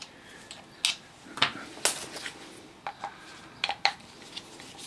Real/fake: real